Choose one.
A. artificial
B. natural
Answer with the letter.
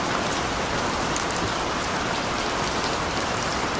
B